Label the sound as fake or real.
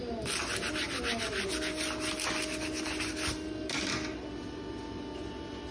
real